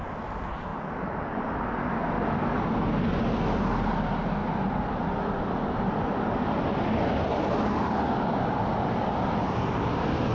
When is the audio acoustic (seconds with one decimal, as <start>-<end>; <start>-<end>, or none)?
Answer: 0.0-10.3